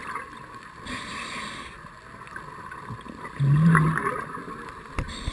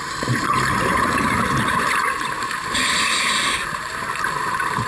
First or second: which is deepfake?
second